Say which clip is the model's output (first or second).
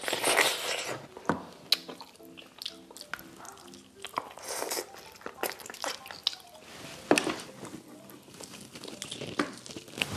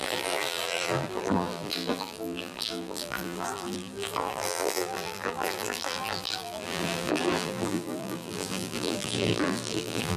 second